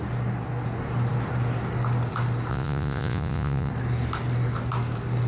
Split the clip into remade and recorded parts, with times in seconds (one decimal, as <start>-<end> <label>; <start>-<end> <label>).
0.0-2.5 recorded; 2.5-3.7 remade; 3.7-5.3 recorded